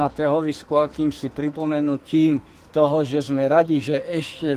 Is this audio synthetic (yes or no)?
yes